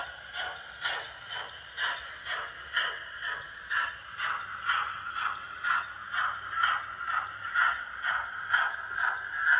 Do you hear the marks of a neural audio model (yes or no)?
no